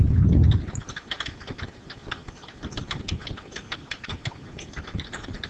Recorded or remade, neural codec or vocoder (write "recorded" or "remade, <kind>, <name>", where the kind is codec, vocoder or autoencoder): recorded